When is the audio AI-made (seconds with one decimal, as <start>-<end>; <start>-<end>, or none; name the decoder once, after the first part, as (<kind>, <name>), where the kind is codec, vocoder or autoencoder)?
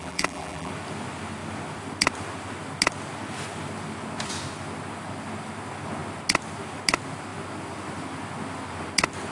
0.0-0.7 (vocoder, BigVGAN v2)